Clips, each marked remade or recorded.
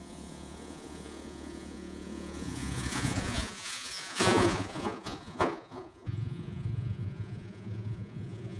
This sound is remade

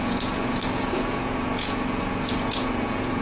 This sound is remade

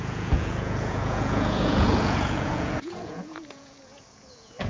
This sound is remade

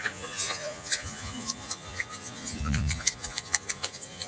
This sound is remade